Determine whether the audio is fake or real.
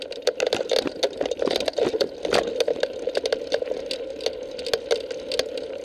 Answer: real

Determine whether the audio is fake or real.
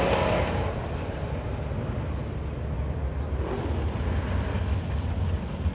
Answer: real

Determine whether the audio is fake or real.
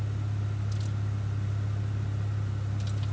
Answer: real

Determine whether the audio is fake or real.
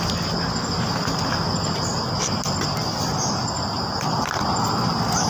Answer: real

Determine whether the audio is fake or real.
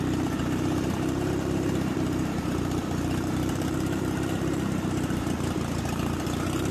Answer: fake